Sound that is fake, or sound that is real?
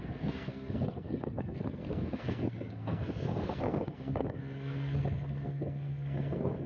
fake